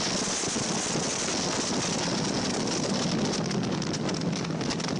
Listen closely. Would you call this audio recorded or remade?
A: recorded